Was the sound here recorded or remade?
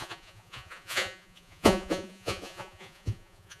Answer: remade